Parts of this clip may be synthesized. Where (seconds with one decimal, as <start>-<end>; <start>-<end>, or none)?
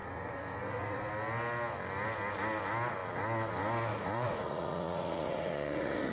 0.0-1.1; 3.9-6.1